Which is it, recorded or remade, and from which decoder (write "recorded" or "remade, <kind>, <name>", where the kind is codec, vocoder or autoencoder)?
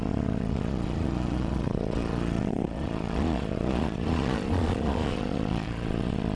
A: remade, vocoder, Vocos